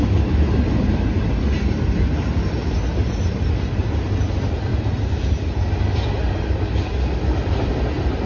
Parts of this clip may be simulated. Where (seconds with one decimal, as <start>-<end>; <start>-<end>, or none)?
none